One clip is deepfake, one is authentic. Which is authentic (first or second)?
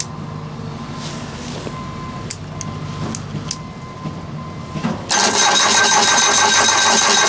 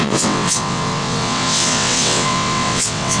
first